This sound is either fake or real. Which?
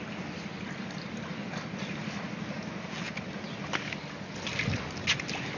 real